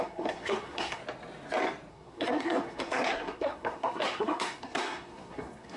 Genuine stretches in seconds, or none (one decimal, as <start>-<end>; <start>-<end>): 1.0-1.9